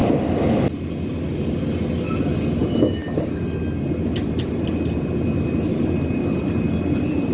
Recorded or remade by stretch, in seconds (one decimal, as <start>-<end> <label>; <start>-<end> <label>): 0.0-6.2 recorded; 6.2-7.3 remade